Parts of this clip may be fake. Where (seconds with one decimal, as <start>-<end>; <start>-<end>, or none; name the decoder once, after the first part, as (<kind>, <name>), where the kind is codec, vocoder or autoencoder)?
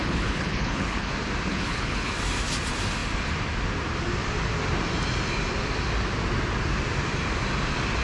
0.0-1.1 (codec, HILCodec); 1.5-2.1